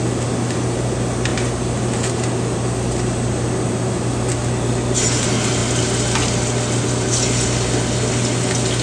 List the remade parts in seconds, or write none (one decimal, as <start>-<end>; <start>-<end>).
none